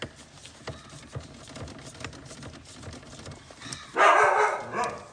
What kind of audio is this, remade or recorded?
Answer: recorded